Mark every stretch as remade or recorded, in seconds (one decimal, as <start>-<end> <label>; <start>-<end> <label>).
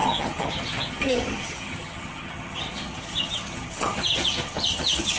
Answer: 0.0-5.2 remade